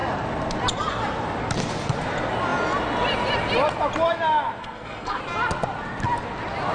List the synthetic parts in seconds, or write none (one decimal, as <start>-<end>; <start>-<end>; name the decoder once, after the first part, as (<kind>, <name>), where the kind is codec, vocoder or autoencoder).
4.6-5.2 (codec, SNAC)